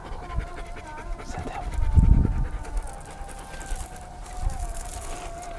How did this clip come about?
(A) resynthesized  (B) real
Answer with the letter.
B